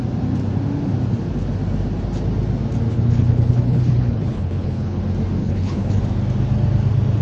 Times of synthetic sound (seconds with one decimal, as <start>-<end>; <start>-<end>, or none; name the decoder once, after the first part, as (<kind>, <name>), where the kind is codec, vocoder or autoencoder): 2.9-5.0 (codec, HILCodec); 5.4-6.0